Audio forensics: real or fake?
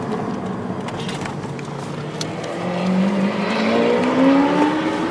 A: real